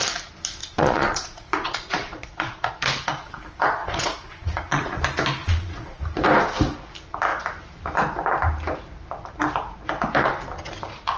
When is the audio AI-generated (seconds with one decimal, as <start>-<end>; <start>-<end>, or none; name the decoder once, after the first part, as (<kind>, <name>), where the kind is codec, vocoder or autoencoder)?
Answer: 0.6-2.7 (vocoder, Vocos); 3.8-5.0; 5.4-6.0